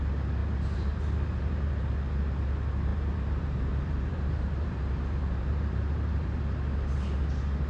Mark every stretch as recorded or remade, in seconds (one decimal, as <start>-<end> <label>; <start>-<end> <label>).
0.0-0.4 recorded; 0.4-1.7 remade; 1.7-2.9 recorded; 2.9-6.4 remade; 6.4-7.7 recorded